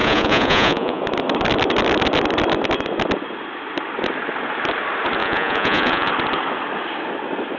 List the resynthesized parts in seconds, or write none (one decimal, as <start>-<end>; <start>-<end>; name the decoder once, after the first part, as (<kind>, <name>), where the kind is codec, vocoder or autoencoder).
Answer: 0.0-1.0 (vocoder, Vocos); 5.2-6.1